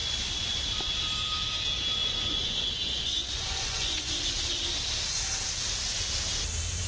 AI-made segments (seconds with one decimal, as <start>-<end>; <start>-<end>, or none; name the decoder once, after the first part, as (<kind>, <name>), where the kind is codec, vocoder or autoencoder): 0.0-0.6 (vocoder, Vocos); 2.0-4.1